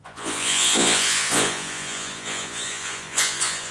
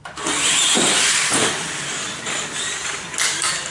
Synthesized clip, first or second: first